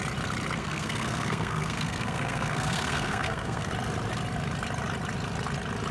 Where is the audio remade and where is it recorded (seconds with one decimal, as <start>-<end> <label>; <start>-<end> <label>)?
0.0-0.6 recorded; 0.6-3.7 remade; 3.7-5.9 recorded